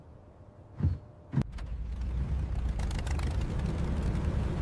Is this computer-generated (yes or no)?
no